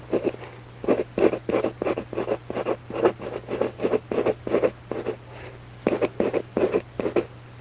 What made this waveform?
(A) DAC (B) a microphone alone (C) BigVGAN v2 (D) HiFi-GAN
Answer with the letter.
B